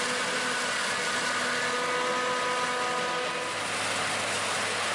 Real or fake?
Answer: real